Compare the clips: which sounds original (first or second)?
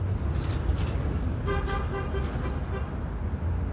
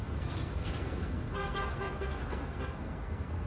first